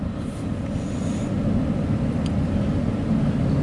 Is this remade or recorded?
recorded